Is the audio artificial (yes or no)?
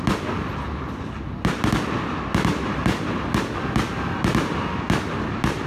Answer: no